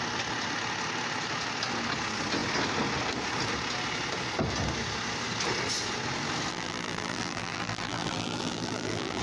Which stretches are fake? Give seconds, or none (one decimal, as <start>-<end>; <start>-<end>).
6.5-9.2